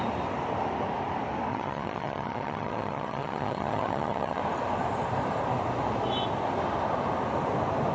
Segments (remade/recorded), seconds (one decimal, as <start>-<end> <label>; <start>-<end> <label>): 0.0-1.5 recorded; 1.5-4.4 remade; 4.4-7.9 recorded